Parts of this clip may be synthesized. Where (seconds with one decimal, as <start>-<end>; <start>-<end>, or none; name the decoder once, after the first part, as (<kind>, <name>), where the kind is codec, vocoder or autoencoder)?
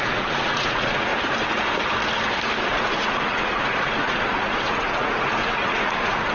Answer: 0.0-1.1 (vocoder, Vocos); 2.7-6.3